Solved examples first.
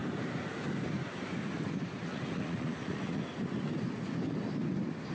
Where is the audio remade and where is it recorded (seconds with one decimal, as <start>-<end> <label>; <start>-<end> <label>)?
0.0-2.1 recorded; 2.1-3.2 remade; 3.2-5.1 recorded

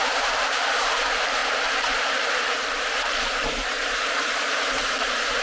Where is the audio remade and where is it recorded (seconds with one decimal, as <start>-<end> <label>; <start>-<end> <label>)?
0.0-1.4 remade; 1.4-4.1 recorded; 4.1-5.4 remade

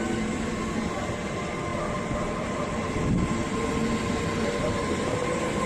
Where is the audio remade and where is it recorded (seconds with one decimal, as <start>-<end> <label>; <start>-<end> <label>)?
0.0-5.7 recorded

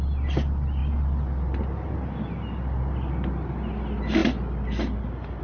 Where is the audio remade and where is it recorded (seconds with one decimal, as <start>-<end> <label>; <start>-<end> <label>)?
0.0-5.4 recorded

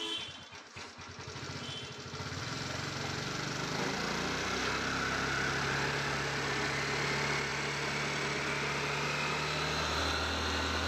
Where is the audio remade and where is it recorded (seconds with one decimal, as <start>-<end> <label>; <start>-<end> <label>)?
0.0-10.9 recorded